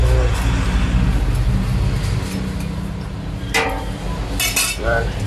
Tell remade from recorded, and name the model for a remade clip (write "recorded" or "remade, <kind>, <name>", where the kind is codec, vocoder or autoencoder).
recorded